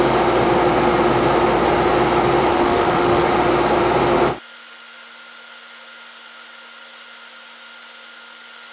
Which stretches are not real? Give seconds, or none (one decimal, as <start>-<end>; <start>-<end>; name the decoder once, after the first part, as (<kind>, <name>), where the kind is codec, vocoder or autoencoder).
2.5-3.3 (autoencoder, DAC-VAE)